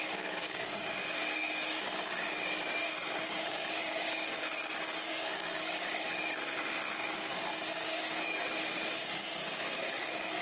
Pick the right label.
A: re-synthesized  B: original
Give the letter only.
A